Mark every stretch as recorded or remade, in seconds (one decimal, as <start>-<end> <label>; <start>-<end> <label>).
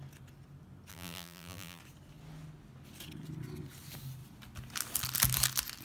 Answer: 0.0-0.9 recorded; 0.9-1.8 remade; 1.8-5.8 recorded